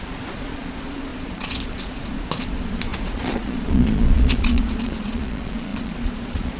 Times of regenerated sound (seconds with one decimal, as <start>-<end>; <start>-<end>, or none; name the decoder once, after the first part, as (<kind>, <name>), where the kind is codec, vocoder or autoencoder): 0.0-6.6 (vocoder, Vocos)